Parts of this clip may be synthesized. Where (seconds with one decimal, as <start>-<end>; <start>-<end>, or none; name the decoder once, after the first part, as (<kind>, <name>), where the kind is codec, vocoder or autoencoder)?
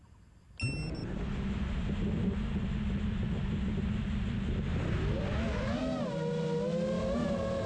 none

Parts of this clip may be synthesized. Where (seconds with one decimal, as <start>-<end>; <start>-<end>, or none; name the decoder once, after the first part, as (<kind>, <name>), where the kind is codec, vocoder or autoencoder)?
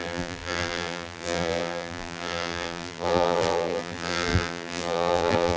0.0-5.6 (vocoder, BigVGAN v2)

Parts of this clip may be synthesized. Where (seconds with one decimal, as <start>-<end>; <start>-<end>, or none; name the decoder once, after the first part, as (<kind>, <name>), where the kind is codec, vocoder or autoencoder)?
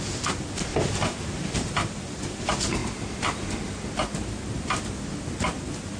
0.7-2.4 (vocoder, BigVGAN v2)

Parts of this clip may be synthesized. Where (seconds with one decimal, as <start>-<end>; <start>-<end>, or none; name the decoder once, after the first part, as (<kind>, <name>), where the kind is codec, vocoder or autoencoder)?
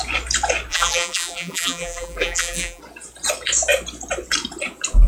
0.7-2.8 (vocoder, BigVGAN v2)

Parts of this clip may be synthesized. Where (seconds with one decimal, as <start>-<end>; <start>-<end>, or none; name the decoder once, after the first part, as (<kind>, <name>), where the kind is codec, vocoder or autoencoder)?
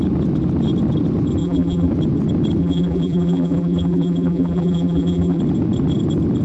1.4-1.9 (vocoder, BigVGAN v2); 2.6-5.4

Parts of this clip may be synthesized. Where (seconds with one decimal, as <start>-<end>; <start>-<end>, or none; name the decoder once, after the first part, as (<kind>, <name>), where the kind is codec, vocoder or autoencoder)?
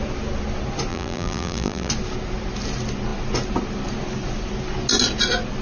0.9-1.9 (vocoder, BigVGAN v2)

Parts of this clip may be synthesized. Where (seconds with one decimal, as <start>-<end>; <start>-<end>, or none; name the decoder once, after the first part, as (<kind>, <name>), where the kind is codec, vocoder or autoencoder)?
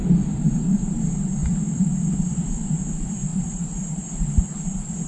0.0-1.0 (vocoder, BigVGAN v2); 3.3-5.1